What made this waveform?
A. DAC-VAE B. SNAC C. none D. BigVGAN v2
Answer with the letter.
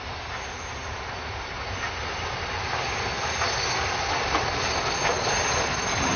C